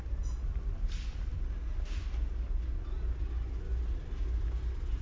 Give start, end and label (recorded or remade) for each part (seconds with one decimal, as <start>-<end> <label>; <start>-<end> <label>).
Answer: 0.0-5.0 recorded